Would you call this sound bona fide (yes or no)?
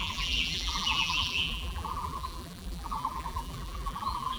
no